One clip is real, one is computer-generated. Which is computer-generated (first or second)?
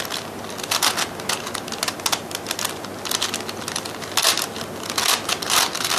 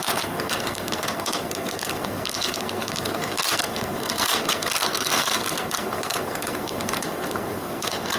second